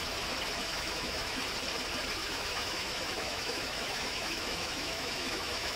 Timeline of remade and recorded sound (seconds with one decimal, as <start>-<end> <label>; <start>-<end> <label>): 0.0-0.6 recorded; 0.6-1.4 remade; 1.4-2.2 recorded; 2.2-5.8 remade